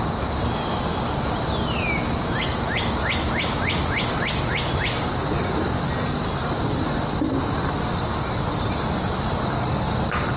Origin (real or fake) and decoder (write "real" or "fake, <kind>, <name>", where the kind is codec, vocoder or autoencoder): real